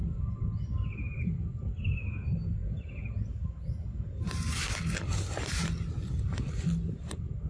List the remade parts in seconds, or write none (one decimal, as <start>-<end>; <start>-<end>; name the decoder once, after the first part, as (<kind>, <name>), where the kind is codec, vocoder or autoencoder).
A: none